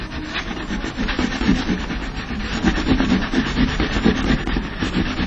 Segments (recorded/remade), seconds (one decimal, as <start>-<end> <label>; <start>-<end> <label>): 0.0-5.3 recorded